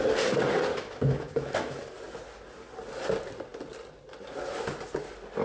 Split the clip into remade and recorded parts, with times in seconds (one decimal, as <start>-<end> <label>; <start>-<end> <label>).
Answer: 0.0-0.7 recorded; 0.7-1.8 remade; 1.8-5.4 recorded